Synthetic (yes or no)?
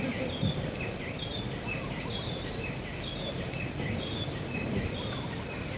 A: no